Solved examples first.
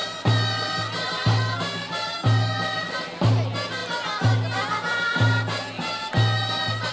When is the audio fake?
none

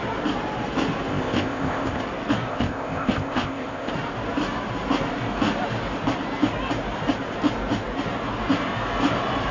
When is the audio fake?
1.1-2.0 (codec, ZipCodec); 2.5-3.9

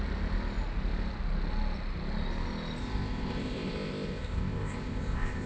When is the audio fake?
2.8-5.5 (codec, ZipCodec)

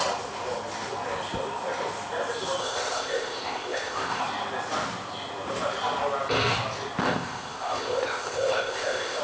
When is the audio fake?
2.6-4.2 (codec, ZipCodec); 7.0-9.2